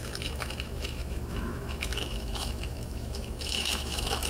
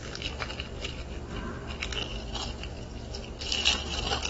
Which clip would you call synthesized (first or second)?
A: first